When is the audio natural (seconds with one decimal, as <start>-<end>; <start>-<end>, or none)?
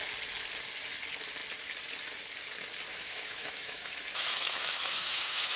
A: 0.0-2.9